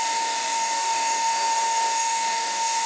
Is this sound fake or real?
fake